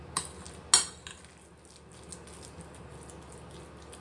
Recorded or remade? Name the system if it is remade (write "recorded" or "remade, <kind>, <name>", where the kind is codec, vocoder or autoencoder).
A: recorded